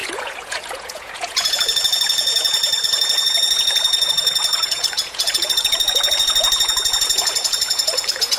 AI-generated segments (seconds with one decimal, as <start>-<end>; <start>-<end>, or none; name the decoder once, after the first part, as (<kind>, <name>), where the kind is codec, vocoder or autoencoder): 0.0-8.4 (vocoder, Vocos)